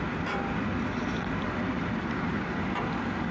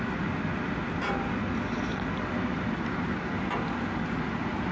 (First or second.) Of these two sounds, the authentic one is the second